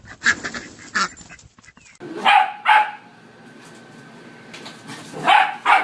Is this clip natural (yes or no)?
yes